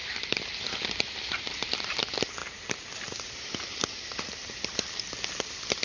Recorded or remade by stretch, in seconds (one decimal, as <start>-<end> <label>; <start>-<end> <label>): 0.0-2.0 remade; 2.0-2.4 recorded; 2.4-5.0 remade; 5.0-5.8 recorded